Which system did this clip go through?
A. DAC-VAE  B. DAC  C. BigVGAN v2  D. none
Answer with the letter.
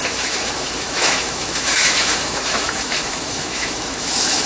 A